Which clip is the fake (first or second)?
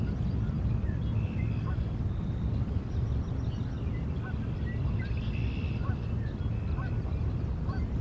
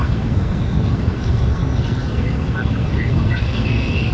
second